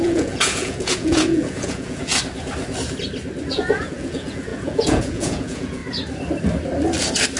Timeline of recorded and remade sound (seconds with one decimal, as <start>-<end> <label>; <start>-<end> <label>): 0.0-2.1 remade; 2.1-3.5 recorded; 3.5-5.8 remade; 5.8-7.4 recorded